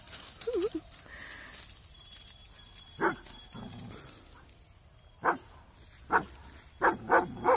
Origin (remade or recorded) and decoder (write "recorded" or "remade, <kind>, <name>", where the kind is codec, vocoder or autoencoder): recorded